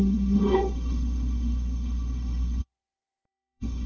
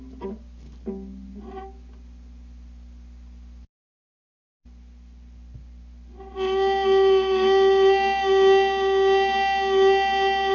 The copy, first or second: first